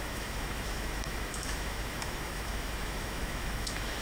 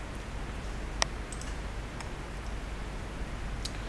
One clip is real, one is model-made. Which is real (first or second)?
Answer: second